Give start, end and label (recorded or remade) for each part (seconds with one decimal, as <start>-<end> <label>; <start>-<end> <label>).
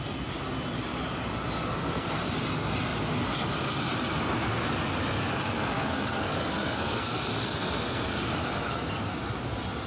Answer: 0.0-1.7 recorded; 1.7-2.2 remade; 2.2-5.3 recorded; 5.3-9.1 remade; 9.1-9.9 recorded